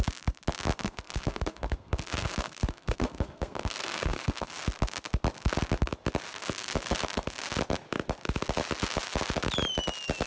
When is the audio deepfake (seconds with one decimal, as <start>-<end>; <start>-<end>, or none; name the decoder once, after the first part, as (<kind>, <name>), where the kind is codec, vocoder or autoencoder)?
0.8-4.5 (codec, SNAC)